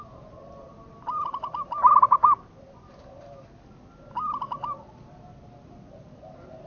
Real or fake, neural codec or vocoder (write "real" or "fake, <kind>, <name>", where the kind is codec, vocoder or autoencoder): real